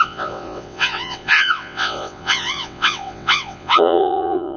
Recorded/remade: remade